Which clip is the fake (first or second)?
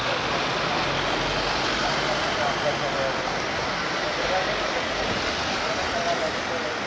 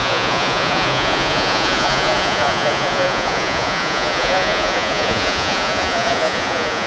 second